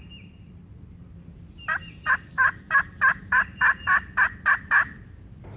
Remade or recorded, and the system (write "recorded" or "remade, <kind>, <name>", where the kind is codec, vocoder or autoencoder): recorded